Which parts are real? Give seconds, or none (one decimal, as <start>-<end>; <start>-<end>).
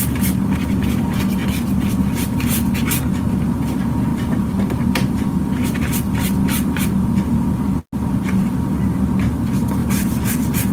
0.0-9.8